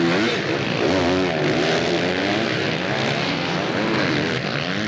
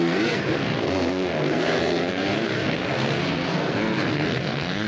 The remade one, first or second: second